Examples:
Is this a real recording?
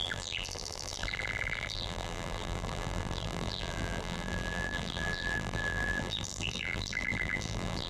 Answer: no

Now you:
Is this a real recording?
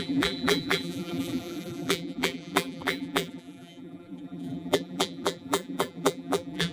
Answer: no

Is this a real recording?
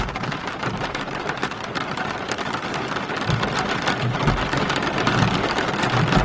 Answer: yes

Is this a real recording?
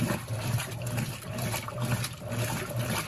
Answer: no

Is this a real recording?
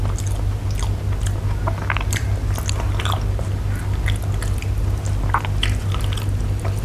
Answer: yes